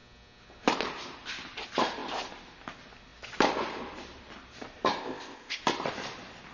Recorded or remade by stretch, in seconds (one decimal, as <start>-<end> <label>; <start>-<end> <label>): 0.0-5.0 recorded; 5.0-5.6 remade; 5.6-6.5 recorded